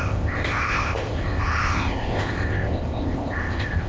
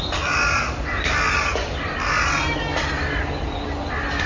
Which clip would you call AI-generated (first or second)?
first